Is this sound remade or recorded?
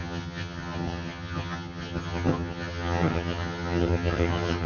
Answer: remade